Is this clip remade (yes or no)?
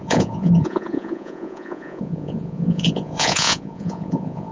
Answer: yes